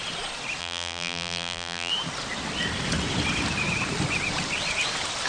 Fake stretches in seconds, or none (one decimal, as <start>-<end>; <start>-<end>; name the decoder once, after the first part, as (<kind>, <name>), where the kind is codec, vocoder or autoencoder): 0.6-1.9 (vocoder, BigVGAN v2)